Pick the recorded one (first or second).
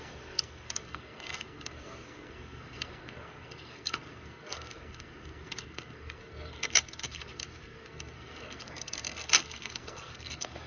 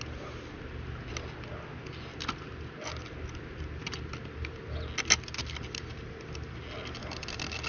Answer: second